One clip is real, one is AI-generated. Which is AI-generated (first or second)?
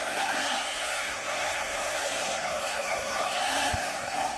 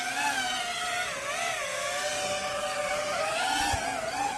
first